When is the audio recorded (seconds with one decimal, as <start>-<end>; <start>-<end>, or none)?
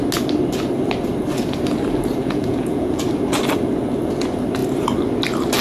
0.0-2.2; 3.0-5.6